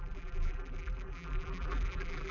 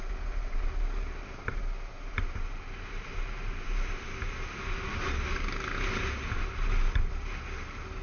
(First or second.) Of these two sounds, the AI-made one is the first